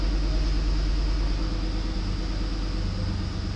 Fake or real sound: real